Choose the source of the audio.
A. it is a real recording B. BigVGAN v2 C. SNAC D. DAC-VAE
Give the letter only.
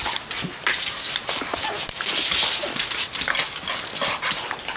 A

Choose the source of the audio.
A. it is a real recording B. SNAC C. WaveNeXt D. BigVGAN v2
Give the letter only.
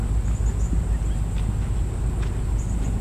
A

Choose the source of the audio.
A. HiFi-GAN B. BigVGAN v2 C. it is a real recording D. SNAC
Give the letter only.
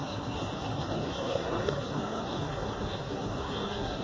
D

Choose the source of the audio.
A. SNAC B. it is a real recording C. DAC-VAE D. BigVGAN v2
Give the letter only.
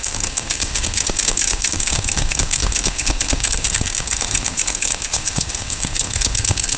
A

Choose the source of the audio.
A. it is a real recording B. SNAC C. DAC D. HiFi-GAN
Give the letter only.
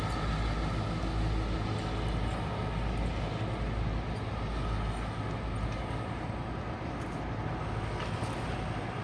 A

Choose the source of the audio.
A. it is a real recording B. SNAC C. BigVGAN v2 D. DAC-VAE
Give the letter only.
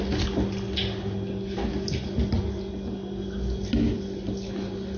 A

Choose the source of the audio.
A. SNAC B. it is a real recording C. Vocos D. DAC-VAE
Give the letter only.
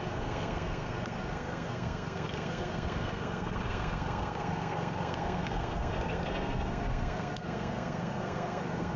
A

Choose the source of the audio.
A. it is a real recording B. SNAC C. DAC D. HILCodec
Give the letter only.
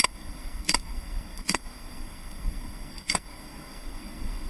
B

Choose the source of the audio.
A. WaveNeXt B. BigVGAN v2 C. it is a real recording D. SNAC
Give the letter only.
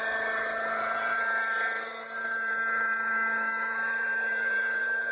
C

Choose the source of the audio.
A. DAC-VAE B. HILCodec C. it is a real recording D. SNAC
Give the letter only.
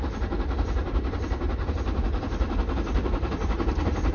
C